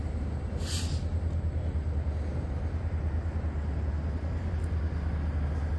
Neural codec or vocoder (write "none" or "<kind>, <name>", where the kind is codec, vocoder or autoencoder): none